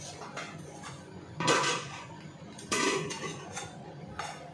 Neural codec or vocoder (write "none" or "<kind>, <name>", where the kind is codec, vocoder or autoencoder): vocoder, Vocos